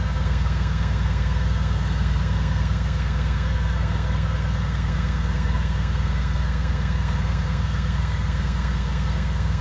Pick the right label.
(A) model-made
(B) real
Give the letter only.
A